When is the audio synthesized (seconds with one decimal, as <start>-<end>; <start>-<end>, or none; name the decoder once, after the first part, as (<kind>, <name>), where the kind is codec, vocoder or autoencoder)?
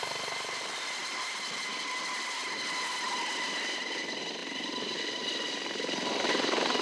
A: 0.0-2.4 (vocoder, BigVGAN v2); 3.6-6.8